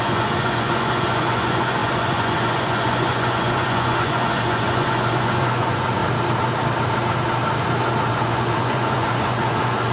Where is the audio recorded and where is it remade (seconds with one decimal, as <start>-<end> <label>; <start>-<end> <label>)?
0.0-6.0 remade; 6.0-8.1 recorded; 8.1-9.9 remade